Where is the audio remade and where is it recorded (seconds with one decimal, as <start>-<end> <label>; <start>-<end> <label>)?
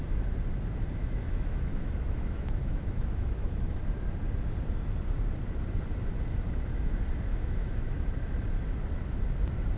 0.0-1.0 recorded; 1.0-3.8 remade; 3.8-7.3 recorded; 7.3-8.4 remade; 8.4-9.8 recorded